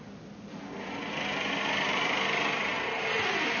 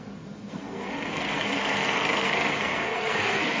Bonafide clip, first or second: first